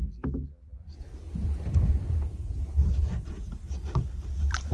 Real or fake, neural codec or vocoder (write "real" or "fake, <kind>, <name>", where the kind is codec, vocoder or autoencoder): real